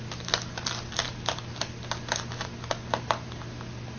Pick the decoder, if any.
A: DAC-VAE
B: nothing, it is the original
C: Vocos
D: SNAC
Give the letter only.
B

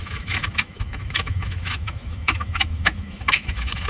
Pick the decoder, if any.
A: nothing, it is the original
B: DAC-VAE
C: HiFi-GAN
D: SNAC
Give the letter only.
B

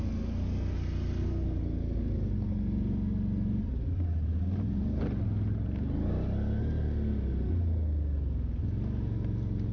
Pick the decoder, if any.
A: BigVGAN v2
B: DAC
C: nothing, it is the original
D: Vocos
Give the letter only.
C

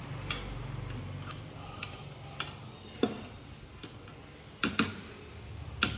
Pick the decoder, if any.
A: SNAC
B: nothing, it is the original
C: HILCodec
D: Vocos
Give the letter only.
B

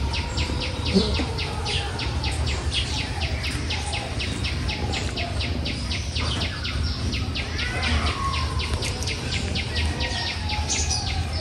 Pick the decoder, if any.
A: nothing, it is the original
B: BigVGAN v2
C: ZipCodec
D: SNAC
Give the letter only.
A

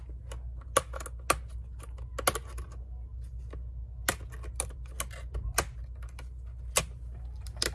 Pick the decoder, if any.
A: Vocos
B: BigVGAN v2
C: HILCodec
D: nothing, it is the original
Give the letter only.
D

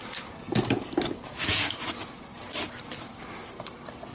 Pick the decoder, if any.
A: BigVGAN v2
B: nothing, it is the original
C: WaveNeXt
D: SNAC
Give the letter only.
B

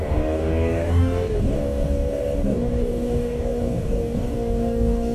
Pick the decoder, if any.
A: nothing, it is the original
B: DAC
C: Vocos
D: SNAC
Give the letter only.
B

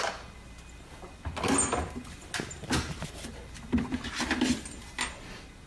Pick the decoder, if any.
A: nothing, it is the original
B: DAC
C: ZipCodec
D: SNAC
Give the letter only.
A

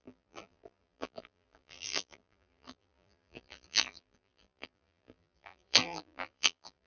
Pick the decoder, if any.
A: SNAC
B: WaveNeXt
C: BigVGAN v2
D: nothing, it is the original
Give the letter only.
C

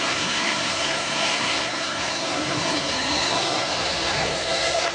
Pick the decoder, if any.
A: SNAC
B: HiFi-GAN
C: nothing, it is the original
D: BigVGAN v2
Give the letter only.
A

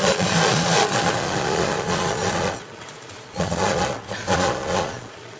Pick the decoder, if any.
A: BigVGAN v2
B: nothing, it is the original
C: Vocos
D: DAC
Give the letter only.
C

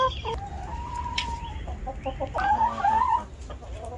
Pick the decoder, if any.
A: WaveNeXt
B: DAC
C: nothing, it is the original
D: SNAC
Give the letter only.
C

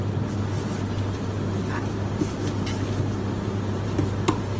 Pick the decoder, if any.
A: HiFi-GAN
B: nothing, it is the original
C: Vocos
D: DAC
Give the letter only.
B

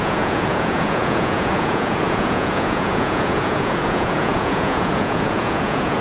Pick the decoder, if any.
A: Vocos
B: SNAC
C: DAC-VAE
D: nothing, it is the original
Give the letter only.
A